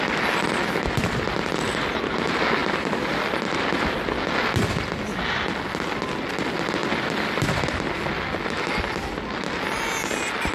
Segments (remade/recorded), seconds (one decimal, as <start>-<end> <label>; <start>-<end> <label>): 0.0-2.6 recorded; 2.6-3.9 remade; 3.9-6.8 recorded; 6.8-7.9 remade; 7.9-10.5 recorded